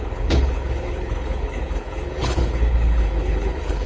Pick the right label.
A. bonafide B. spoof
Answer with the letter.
B